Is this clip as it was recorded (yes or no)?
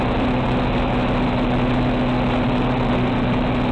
yes